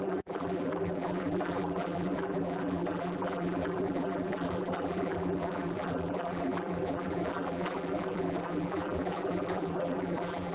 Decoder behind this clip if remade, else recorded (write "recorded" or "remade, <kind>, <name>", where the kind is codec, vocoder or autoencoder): remade, vocoder, BigVGAN v2